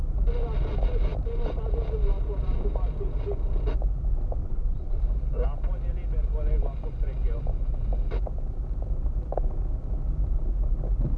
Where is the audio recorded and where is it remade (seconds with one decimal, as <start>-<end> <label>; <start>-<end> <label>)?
0.0-4.4 recorded; 4.4-5.0 remade; 5.0-11.2 recorded